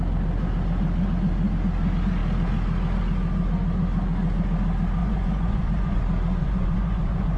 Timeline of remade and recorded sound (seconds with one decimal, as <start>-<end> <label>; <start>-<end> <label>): 0.0-5.0 recorded; 5.0-6.0 remade; 6.0-6.4 recorded; 6.4-7.4 remade